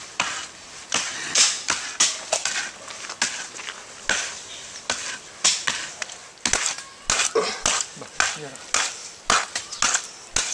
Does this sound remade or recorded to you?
recorded